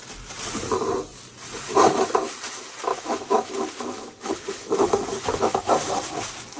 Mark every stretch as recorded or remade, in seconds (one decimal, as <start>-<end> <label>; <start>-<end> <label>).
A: 0.0-2.9 recorded; 2.9-5.7 remade; 5.7-6.6 recorded